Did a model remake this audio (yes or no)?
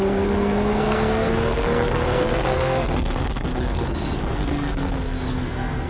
yes